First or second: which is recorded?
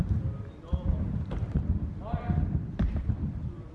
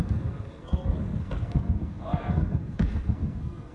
first